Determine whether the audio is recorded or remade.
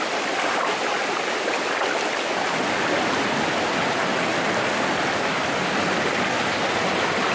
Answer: recorded